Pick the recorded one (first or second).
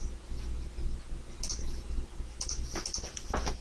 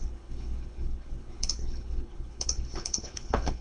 first